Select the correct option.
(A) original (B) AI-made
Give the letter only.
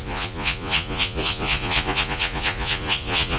B